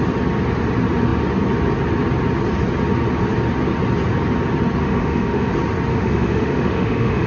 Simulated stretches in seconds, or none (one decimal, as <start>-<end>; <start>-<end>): 4.8-5.5; 5.9-7.3